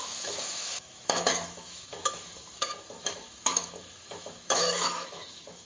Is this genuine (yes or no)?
no